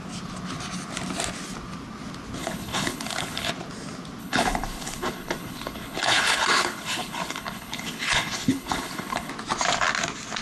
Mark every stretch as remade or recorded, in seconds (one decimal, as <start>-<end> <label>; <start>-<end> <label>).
0.0-2.4 recorded; 2.4-3.5 remade; 3.5-4.2 recorded; 4.2-9.3 remade; 9.3-10.4 recorded